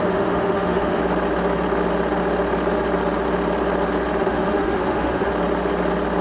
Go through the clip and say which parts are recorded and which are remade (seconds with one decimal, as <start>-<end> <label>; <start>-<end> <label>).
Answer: 0.0-1.0 remade; 1.0-4.2 recorded; 4.2-5.3 remade; 5.3-6.2 recorded